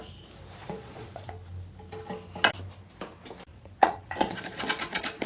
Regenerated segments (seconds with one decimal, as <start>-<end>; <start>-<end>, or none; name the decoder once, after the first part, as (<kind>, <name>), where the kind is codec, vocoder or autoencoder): 0.6-1.3 (vocoder, Vocos); 3.5-5.3